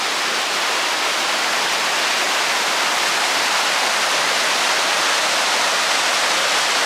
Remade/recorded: recorded